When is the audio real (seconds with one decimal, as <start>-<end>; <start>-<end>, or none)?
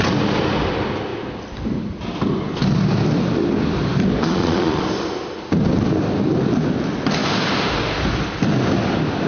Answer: 0.0-4.2; 4.8-9.3